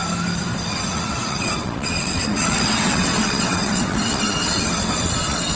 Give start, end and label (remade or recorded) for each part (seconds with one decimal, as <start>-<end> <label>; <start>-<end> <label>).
0.0-0.7 recorded; 0.7-5.6 remade

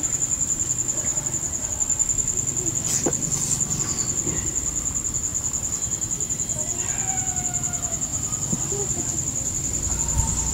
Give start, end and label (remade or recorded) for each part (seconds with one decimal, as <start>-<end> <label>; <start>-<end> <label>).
0.0-8.1 recorded; 8.1-9.9 remade; 9.9-10.5 recorded

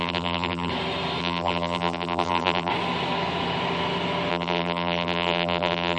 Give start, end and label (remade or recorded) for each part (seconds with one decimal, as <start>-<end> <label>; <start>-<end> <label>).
0.0-0.7 remade; 0.7-1.2 recorded; 1.2-2.7 remade; 2.7-4.3 recorded; 4.3-6.0 remade